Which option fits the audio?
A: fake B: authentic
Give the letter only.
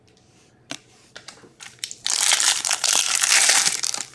A